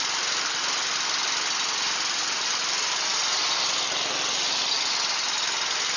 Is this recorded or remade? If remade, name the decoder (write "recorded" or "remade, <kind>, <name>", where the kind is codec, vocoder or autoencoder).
recorded